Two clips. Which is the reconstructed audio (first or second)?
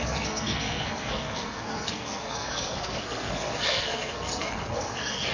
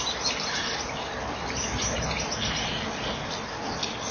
first